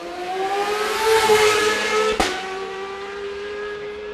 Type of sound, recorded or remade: remade